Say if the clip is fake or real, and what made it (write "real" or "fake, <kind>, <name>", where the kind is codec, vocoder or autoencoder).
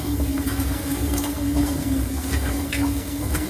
fake, codec, SNAC